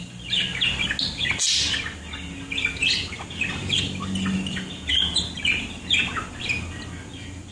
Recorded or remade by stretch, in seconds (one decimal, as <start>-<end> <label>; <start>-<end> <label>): 0.0-7.5 recorded

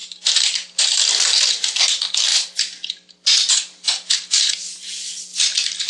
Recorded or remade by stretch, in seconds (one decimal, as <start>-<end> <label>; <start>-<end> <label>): 0.0-5.9 recorded

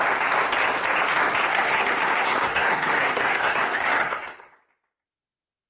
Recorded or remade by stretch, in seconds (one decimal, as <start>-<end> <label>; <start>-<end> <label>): 0.0-1.5 recorded; 1.5-4.5 remade; 4.5-5.7 recorded